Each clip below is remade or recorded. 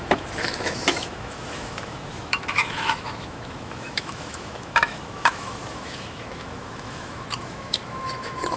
remade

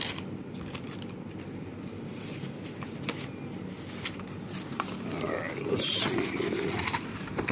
recorded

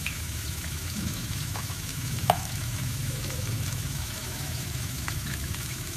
remade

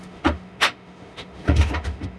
remade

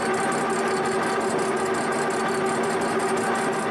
recorded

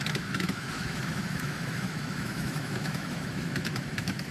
remade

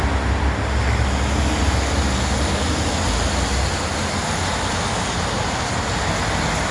recorded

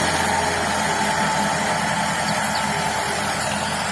recorded